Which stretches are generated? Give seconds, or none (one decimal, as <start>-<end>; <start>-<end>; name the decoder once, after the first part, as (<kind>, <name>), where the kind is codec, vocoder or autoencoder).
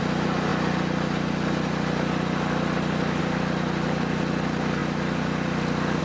none